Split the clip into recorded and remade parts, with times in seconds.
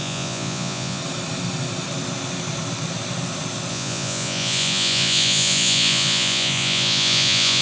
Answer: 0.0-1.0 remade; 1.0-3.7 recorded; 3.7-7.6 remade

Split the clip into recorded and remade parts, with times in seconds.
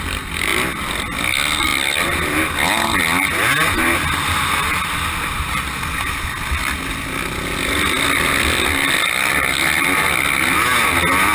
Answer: 0.0-11.3 recorded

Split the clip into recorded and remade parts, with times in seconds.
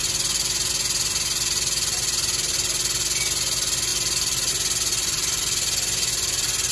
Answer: 0.0-0.7 remade; 0.7-3.9 recorded; 3.9-4.5 remade; 4.5-4.9 recorded; 4.9-5.4 remade; 5.4-6.7 recorded